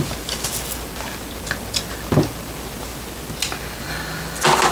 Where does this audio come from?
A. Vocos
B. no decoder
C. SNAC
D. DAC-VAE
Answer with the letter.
B